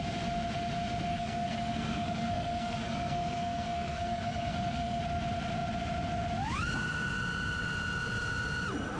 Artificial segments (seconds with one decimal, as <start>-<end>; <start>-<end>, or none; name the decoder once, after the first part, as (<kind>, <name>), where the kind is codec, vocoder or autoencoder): 1.1-5.0 (codec, SNAC)